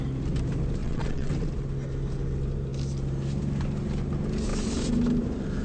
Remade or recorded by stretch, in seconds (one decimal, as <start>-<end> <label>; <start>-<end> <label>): 0.0-0.8 recorded; 0.8-1.3 remade; 1.3-5.6 recorded